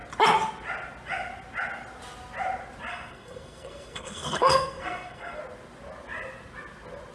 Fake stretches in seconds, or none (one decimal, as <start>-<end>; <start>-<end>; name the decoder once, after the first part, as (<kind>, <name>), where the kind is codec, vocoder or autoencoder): 2.9-5.4 (codec, SNAC)